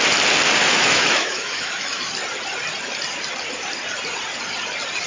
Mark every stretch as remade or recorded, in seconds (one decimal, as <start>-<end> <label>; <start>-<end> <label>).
0.0-0.6 recorded; 0.6-2.1 remade; 2.1-5.1 recorded

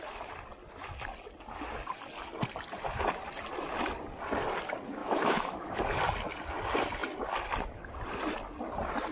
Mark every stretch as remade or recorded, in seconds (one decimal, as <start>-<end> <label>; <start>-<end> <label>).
0.0-5.0 recorded; 5.0-5.8 remade; 5.8-9.1 recorded

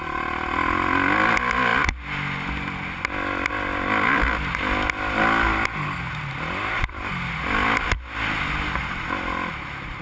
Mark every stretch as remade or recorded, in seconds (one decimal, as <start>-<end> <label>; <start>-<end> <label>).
0.0-10.0 recorded

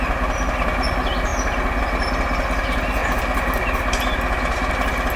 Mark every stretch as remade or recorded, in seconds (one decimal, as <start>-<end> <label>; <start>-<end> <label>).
0.0-5.2 recorded

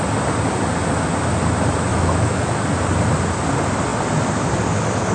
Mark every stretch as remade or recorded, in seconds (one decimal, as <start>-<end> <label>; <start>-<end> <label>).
0.0-1.9 recorded; 1.9-2.6 remade; 2.6-5.1 recorded

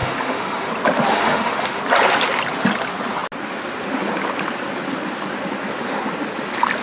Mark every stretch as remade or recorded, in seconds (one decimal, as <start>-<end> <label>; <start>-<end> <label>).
0.0-0.7 remade; 0.7-1.1 recorded; 1.1-1.8 remade; 1.8-6.8 recorded